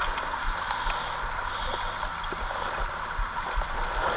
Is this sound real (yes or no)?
yes